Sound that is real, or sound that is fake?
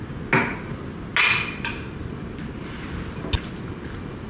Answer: real